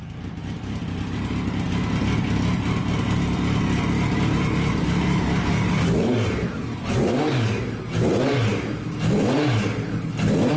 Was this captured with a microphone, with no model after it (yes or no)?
yes